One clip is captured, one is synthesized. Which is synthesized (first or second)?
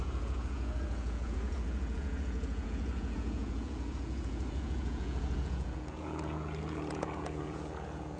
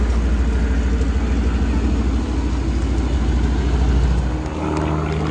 first